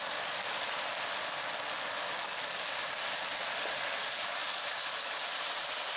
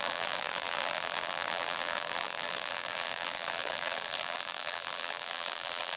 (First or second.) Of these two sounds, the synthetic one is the second